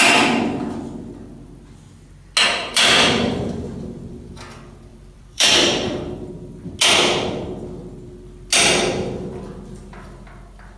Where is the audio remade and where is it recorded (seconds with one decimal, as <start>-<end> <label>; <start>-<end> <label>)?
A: 0.0-2.5 recorded; 2.5-4.3 remade; 4.3-4.9 recorded; 4.9-6.3 remade; 6.3-10.8 recorded